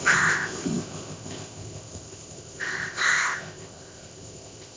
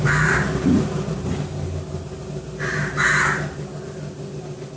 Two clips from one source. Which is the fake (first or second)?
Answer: first